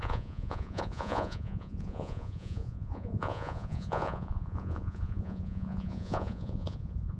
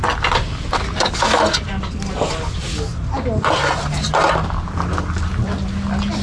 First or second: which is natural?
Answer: second